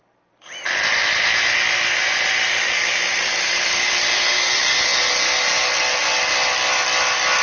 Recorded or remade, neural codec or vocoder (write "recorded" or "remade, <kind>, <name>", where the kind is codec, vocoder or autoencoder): recorded